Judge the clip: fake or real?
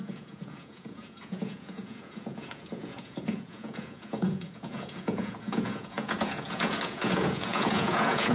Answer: fake